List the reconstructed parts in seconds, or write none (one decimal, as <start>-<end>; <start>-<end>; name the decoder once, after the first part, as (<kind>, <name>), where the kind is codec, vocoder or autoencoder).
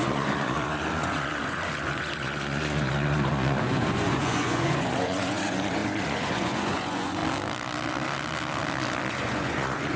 0.0-7.2 (vocoder, Vocos); 9.1-10.0